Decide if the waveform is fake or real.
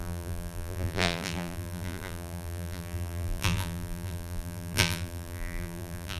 fake